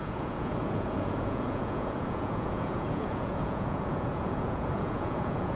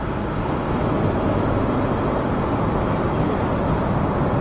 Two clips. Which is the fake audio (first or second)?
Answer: first